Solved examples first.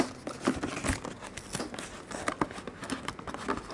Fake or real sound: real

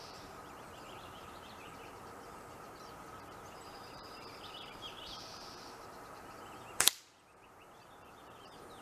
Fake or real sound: fake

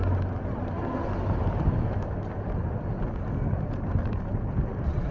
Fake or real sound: real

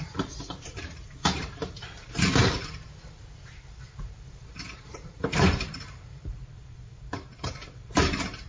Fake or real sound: fake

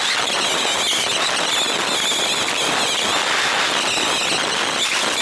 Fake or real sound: real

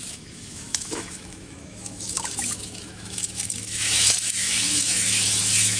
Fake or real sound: fake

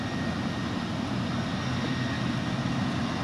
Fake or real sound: real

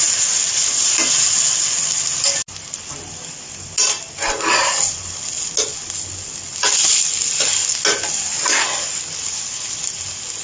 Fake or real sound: real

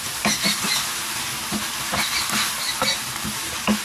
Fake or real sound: real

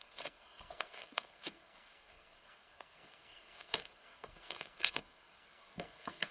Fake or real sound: fake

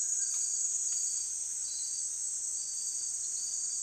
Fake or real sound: real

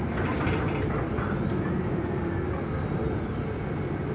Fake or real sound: real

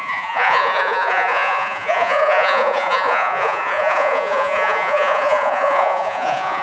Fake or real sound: fake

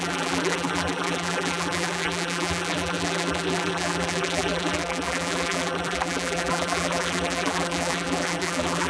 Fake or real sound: fake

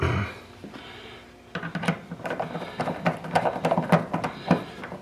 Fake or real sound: real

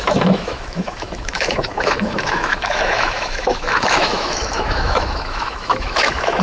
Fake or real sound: fake